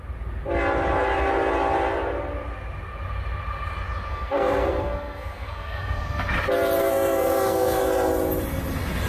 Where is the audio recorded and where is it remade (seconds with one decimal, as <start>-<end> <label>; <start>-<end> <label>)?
0.0-4.1 recorded; 4.1-6.3 remade; 6.3-6.8 recorded; 6.8-7.8 remade; 7.8-9.1 recorded